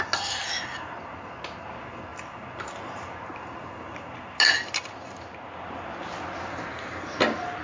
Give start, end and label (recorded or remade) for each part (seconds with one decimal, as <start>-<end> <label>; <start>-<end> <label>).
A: 0.0-7.6 recorded

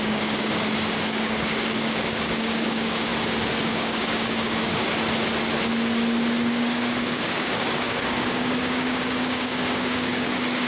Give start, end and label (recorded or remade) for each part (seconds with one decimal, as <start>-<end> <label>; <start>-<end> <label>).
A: 0.0-3.1 remade; 3.1-3.6 recorded; 3.6-4.8 remade; 4.8-6.5 recorded; 6.5-10.7 remade

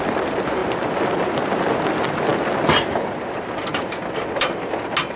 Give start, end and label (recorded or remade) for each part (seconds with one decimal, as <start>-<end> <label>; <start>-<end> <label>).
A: 0.0-5.2 recorded

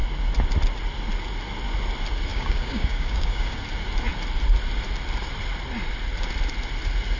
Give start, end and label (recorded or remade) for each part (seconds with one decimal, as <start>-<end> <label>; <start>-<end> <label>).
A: 0.0-2.3 recorded; 2.3-3.6 remade; 3.6-7.2 recorded

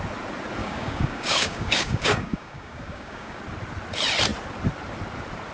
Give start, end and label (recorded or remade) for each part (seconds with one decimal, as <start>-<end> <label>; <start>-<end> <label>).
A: 0.0-0.6 recorded; 0.6-3.4 remade; 3.4-5.5 recorded

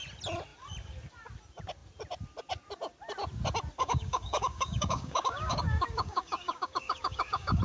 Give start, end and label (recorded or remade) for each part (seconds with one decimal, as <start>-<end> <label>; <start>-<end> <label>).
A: 0.0-3.8 recorded; 3.8-7.6 remade

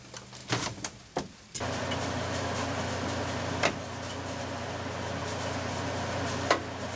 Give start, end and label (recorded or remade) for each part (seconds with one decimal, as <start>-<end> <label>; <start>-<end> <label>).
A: 0.0-7.0 recorded

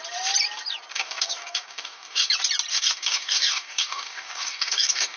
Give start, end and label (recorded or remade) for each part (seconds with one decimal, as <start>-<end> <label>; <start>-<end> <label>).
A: 0.0-0.9 recorded; 0.9-2.3 remade; 2.3-2.7 recorded; 2.7-5.2 remade